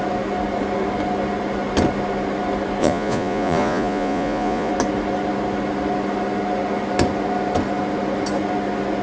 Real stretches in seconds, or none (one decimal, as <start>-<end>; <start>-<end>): 0.0-2.8; 4.7-9.0

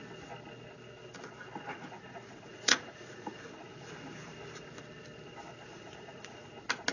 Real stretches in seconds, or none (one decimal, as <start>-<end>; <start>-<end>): 0.0-1.7; 3.9-5.7; 6.4-6.9

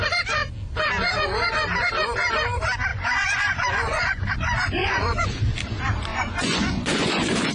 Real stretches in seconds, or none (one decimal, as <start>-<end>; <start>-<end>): 0.0-2.9; 4.3-4.8; 5.4-6.1

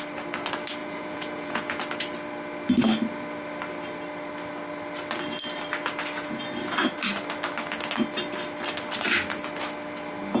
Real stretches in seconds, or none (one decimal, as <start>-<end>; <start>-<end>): 0.0-0.8; 1.8-10.4

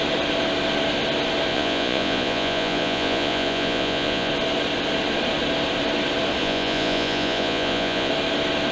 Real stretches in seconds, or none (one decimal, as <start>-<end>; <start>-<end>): 0.0-1.5; 4.3-6.4; 8.1-8.7

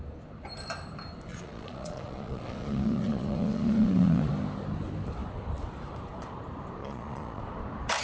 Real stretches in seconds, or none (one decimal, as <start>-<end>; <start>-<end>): 0.0-1.3; 4.3-6.8; 7.4-8.0

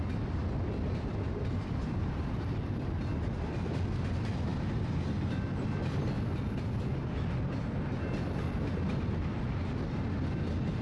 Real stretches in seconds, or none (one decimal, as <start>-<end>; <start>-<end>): 0.0-10.8

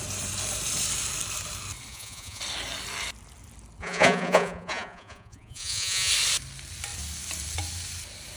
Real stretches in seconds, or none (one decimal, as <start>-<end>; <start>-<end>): 0.0-1.9; 2.4-3.8; 6.1-8.4